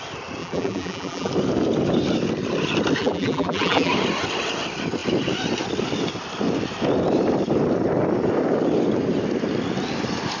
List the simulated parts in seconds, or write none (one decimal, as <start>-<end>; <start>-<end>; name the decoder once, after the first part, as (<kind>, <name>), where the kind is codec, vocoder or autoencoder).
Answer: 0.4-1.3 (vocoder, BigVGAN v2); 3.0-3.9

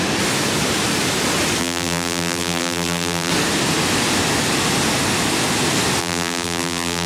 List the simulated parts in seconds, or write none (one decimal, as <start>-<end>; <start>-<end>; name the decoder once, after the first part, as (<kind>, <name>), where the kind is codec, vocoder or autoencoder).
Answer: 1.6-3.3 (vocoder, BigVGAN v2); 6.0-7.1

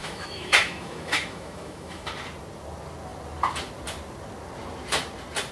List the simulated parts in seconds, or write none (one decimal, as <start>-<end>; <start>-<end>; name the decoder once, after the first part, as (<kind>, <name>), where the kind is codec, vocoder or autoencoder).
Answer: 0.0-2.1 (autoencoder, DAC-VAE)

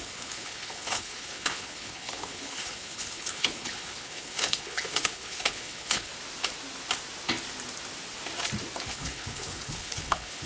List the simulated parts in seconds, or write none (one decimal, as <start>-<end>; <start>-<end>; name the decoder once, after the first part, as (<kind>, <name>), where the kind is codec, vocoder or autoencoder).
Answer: 0.0-6.1 (codec, HILCodec); 8.9-10.5

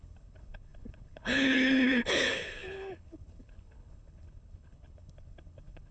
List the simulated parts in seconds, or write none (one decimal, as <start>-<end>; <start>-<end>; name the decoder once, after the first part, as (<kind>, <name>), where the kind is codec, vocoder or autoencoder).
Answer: 0.0-5.9 (codec, HILCodec)

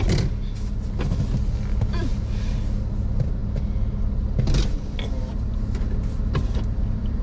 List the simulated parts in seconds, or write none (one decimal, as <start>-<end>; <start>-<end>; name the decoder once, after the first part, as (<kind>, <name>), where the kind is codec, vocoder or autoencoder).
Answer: none

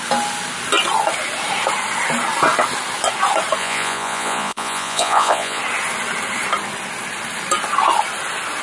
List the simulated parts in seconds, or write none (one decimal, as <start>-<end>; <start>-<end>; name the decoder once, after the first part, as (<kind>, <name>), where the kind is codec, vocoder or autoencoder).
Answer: 3.6-5.6 (vocoder, Vocos)

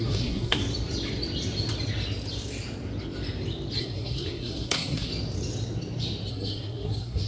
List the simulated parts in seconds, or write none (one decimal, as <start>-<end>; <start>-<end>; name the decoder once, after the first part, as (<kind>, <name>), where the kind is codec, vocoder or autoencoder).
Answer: 0.0-0.6 (codec, SNAC); 3.8-5.1; 6.3-7.3